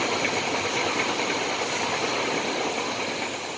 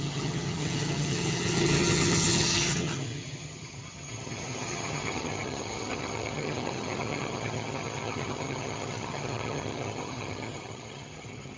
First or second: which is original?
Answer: first